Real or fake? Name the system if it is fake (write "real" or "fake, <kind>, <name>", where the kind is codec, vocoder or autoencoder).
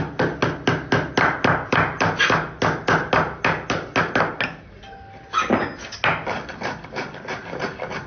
real